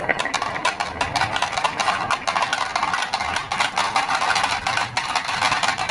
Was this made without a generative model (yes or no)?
yes